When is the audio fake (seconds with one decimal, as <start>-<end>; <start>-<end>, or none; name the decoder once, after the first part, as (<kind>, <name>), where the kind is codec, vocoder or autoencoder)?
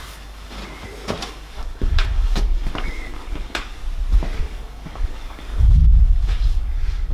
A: 0.0-0.6 (codec, DAC); 1.3-3.8; 4.4-7.1